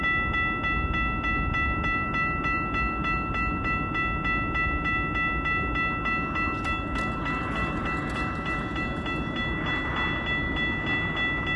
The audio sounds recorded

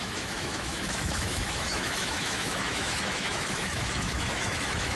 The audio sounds remade